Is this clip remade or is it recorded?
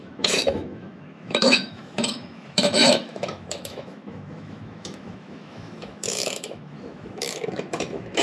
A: remade